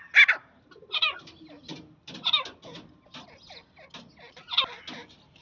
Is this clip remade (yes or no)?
no